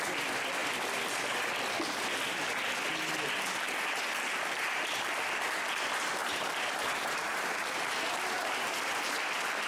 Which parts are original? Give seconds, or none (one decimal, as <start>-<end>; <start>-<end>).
0.0-6.2; 7.8-9.7